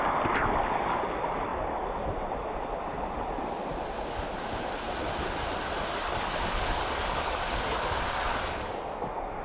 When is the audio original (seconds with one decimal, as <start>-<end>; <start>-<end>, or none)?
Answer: 0.0-6.1; 8.8-9.4